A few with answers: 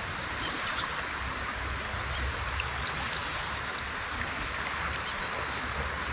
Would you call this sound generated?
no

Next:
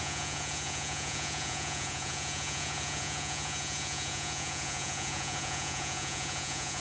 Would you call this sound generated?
yes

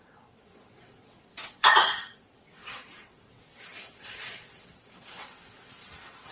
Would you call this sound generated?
yes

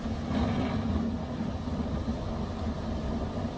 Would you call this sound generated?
no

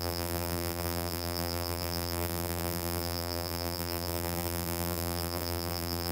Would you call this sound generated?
yes